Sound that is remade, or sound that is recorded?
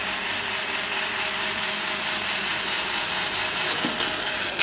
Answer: recorded